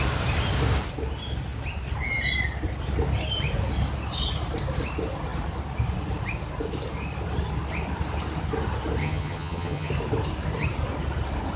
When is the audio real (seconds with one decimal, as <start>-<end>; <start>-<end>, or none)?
0.0-9.0; 9.9-11.6